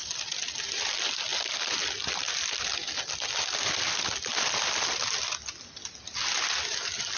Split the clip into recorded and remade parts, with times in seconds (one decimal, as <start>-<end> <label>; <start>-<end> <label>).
0.0-7.2 recorded